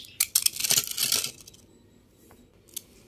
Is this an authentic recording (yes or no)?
yes